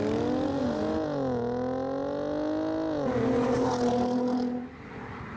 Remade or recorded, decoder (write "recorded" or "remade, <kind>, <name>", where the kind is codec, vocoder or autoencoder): recorded